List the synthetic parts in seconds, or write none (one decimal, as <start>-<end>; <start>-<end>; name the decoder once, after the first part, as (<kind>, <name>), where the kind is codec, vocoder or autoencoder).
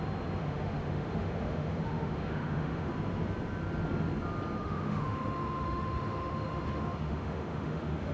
0.4-2.9 (autoencoder, DAC-VAE); 4.6-8.1